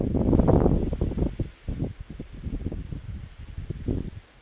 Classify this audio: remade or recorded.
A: recorded